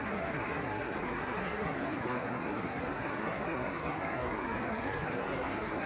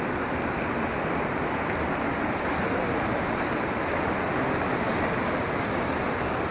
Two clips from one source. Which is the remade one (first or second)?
first